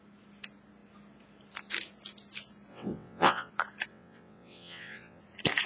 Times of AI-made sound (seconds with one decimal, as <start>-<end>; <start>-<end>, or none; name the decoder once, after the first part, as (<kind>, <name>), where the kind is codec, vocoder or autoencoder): 2.7-3.5 (vocoder, WaveNeXt); 3.9-5.2